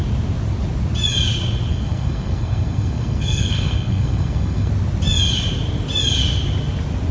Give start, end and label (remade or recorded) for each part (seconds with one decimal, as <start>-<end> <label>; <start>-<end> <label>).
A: 0.0-1.7 recorded; 1.7-4.7 remade; 4.7-7.1 recorded